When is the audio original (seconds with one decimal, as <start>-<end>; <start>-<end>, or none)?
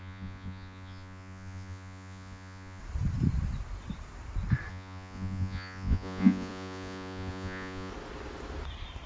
2.8-4.7; 7.9-9.1